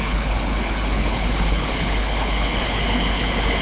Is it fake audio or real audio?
fake